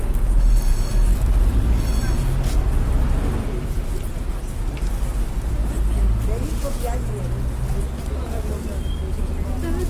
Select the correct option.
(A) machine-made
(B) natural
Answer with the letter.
B